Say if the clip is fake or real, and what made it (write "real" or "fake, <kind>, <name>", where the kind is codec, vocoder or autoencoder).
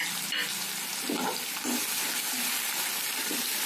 real